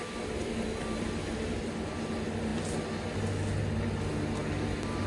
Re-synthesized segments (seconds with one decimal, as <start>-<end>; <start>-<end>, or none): none